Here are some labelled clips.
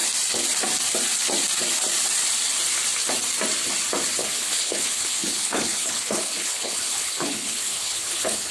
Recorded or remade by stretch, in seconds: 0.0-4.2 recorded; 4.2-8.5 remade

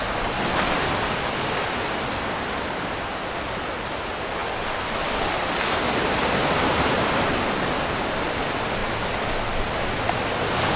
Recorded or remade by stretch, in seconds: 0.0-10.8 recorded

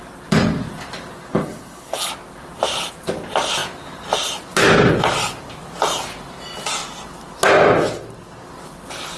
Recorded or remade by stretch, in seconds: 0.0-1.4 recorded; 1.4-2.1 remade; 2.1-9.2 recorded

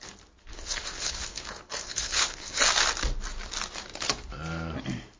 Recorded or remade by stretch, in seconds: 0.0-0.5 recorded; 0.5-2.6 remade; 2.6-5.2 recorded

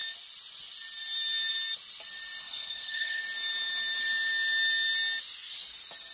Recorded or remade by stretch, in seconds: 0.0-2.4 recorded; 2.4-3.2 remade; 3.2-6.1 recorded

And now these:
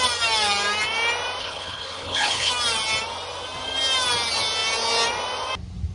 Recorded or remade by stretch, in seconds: 0.0-1.4 recorded; 1.4-2.5 remade; 2.5-5.9 recorded